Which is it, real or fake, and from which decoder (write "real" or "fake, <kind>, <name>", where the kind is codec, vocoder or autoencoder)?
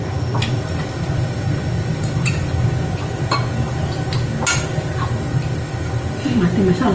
real